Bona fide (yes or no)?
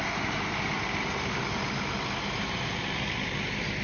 yes